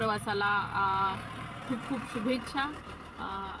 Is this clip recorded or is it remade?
remade